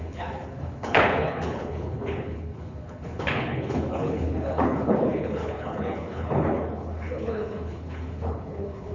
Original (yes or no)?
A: no